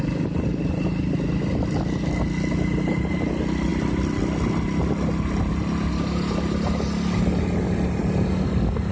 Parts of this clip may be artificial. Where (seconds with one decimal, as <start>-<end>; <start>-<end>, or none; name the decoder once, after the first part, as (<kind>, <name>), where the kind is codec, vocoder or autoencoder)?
none